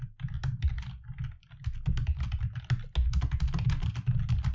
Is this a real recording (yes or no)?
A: yes